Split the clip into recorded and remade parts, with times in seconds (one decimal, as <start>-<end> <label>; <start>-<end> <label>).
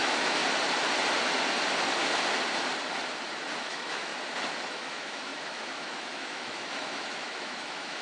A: 0.0-0.4 remade; 0.4-3.6 recorded; 3.6-4.1 remade; 4.1-4.7 recorded; 4.7-8.0 remade